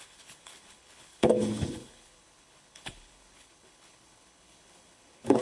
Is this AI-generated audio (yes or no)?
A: yes